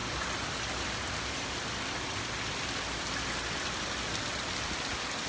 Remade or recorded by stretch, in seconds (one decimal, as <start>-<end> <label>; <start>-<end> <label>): 0.0-5.3 recorded